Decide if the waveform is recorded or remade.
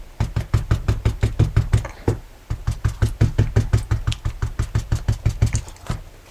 recorded